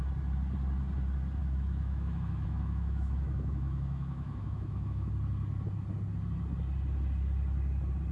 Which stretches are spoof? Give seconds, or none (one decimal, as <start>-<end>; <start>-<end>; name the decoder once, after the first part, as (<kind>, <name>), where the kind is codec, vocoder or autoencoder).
1.4-5.1 (autoencoder, DAC-VAE)